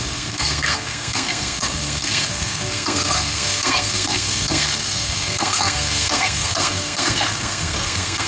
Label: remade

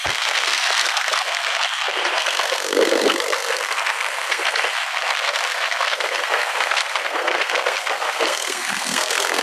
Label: remade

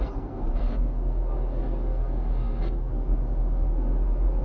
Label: remade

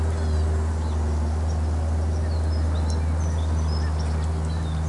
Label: recorded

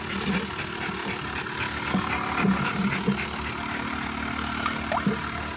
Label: recorded